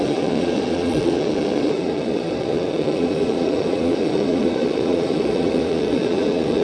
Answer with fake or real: fake